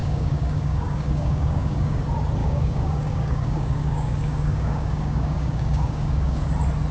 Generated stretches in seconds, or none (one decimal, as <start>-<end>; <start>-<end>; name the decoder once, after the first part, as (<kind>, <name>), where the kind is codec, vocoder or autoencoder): 0.0-2.0 (codec, DAC); 2.4-6.5